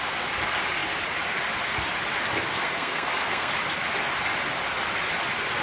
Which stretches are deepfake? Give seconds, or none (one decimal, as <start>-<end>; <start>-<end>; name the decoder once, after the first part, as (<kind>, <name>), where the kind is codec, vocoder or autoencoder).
2.5-3.5 (codec, SNAC)